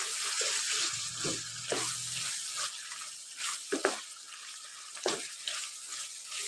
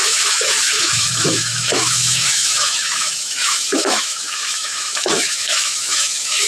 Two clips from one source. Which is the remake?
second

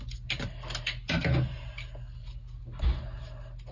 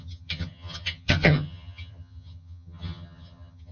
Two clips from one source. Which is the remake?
second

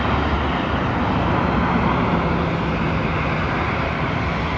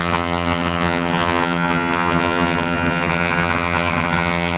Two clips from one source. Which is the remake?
second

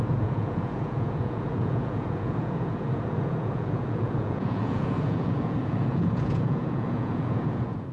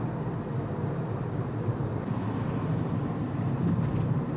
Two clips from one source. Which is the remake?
first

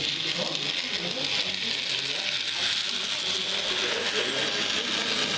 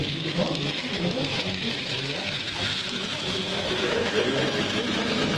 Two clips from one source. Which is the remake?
second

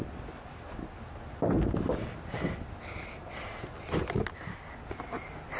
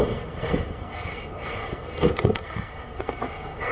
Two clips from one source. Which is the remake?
second